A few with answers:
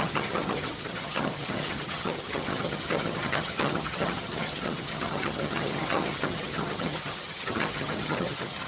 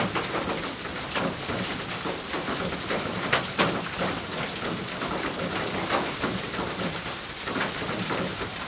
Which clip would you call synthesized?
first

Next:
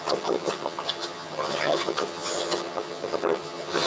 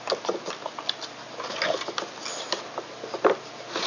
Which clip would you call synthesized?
first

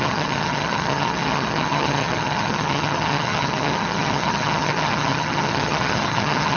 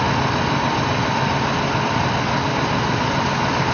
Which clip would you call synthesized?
first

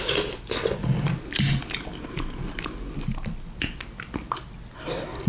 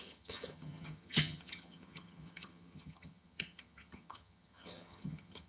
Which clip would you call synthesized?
second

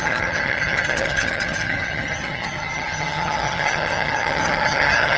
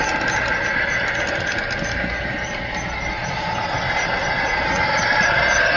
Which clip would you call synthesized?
first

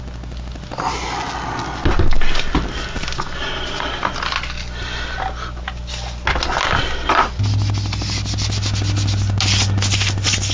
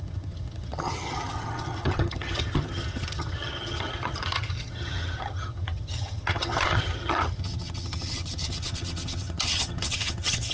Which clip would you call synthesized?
second